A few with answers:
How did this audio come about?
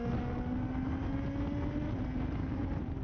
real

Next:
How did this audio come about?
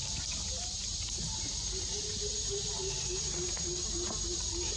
real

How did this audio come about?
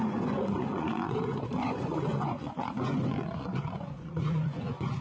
fake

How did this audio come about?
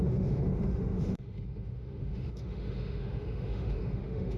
fake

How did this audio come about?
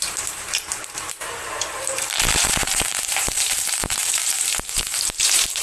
fake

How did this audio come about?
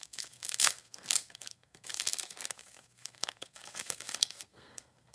fake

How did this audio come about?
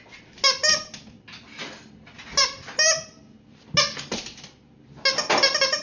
real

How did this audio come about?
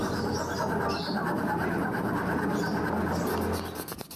real